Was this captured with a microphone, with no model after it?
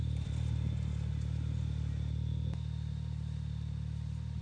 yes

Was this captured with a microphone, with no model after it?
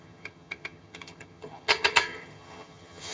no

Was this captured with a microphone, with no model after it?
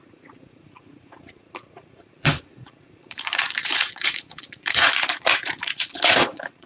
no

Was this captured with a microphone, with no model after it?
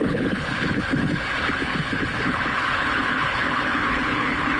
no